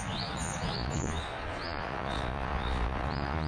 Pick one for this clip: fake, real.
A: fake